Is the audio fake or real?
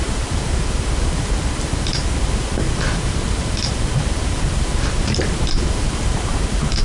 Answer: fake